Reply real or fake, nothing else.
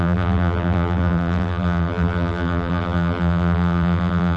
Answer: fake